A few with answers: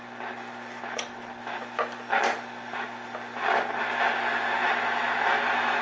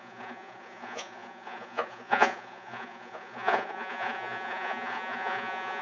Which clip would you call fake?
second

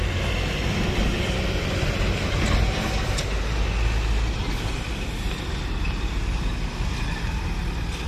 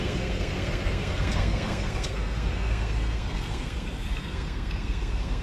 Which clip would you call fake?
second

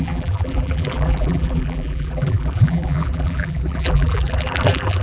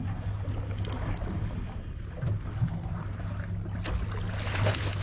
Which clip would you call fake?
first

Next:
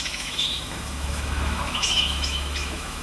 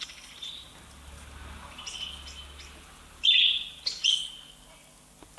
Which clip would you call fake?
first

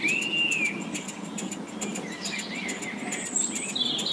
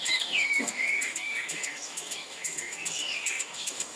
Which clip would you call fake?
second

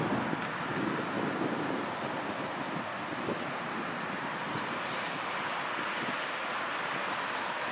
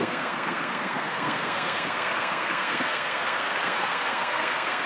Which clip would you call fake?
second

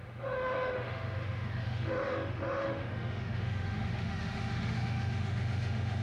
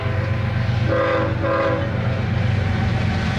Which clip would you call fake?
first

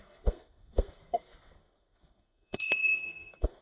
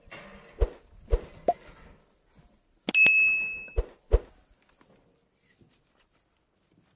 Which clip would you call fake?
first